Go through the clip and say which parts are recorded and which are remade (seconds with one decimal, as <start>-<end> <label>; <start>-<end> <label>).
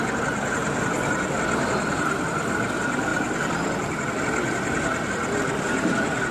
0.0-6.3 recorded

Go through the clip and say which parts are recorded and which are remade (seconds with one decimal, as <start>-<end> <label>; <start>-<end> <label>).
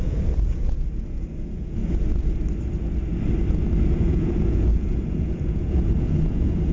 0.0-1.8 remade; 1.8-3.9 recorded; 3.9-6.7 remade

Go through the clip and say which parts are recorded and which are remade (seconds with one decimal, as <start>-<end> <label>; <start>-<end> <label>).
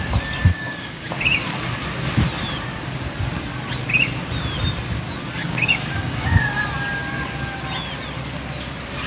0.0-0.5 recorded; 0.5-1.1 remade; 1.1-5.4 recorded; 5.4-6.4 remade; 6.4-9.1 recorded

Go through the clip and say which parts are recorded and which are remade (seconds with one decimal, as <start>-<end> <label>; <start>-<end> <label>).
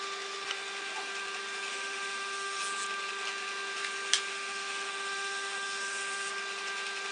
0.0-1.7 recorded; 1.7-2.6 remade; 2.6-4.3 recorded; 4.3-6.3 remade; 6.3-7.1 recorded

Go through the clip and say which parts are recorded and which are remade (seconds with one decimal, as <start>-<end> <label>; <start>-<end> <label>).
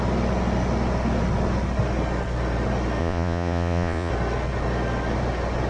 0.0-3.0 recorded; 3.0-4.1 remade; 4.1-5.7 recorded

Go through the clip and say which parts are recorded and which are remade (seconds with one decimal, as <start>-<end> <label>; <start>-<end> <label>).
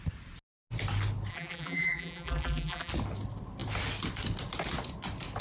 0.0-1.3 recorded; 1.3-2.9 remade; 2.9-5.4 recorded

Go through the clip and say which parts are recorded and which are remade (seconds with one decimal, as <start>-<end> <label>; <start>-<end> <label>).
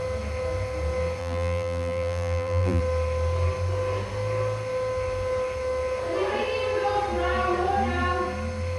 0.0-1.2 recorded; 1.2-2.8 remade; 2.8-8.8 recorded